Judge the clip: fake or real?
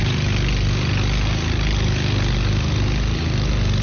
real